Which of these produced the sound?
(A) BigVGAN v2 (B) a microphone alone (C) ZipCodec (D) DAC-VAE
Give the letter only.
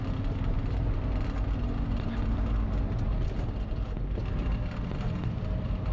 B